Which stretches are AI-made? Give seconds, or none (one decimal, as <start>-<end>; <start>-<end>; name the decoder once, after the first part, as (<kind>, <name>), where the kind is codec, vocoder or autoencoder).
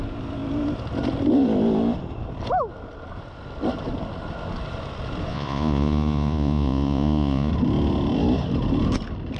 5.3-7.5 (vocoder, Vocos)